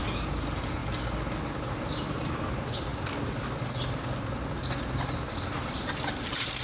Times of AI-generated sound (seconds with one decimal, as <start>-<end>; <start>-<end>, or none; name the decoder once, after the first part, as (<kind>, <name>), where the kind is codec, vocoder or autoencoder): none